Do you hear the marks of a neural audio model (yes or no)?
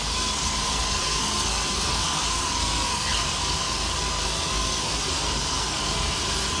yes